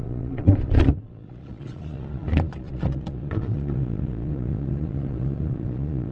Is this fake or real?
fake